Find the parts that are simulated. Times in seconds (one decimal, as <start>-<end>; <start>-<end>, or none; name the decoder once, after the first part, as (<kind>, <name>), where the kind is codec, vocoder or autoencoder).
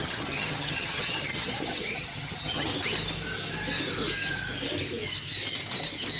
0.0-2.7 (vocoder, HiFi-GAN)